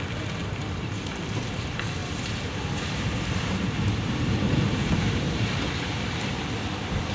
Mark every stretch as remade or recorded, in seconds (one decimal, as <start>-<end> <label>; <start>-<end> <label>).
0.0-0.4 recorded; 0.4-1.0 remade; 1.0-2.0 recorded; 2.0-5.6 remade; 5.6-7.1 recorded